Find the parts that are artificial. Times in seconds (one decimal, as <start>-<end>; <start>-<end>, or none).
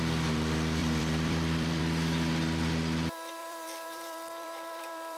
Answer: 0.8-1.8; 3.4-5.2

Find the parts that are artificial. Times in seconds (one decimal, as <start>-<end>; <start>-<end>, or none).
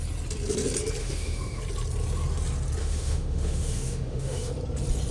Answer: 1.0-1.6; 2.8-4.5